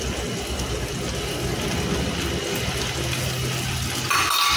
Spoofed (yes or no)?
no